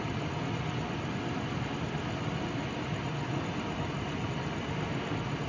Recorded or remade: recorded